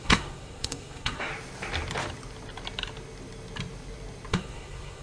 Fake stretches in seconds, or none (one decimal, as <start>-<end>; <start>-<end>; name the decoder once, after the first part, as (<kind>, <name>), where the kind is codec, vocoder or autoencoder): 0.0-1.3 (codec, SNAC); 4.3-5.0